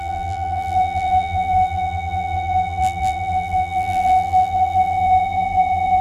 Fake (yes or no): yes